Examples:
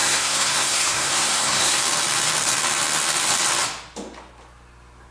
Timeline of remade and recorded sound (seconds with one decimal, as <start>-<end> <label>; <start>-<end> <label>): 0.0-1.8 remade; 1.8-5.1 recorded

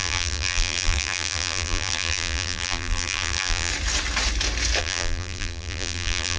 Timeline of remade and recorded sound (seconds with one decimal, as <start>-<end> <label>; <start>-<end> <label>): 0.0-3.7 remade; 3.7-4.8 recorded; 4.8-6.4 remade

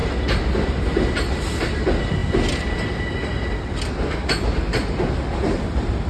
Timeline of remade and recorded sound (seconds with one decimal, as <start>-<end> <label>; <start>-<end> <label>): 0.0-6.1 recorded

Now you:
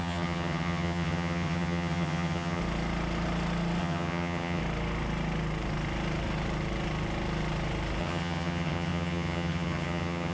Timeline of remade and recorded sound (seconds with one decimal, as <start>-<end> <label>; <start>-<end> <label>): 0.0-2.6 remade; 2.6-3.8 recorded; 3.8-4.6 remade; 4.6-8.0 recorded; 8.0-10.3 remade